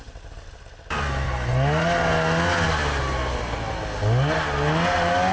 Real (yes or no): yes